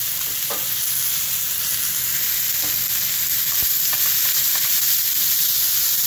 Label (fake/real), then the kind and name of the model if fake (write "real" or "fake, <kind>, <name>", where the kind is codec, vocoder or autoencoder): real